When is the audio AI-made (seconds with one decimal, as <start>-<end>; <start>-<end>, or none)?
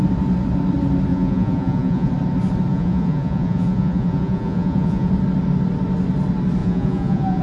1.1-2.1; 2.7-5.1; 6.6-7.4